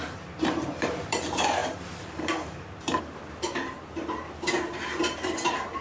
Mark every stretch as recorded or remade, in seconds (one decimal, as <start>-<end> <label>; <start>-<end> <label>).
0.0-5.8 remade